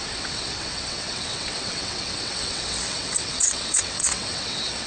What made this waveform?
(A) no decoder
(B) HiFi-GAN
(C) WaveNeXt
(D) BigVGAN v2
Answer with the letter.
C